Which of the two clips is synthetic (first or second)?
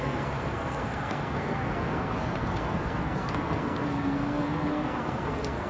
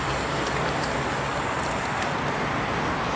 first